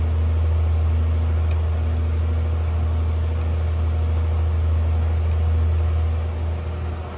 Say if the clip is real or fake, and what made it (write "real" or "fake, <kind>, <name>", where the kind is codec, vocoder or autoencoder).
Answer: real